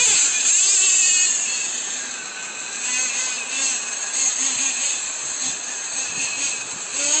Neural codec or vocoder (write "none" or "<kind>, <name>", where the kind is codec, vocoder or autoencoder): none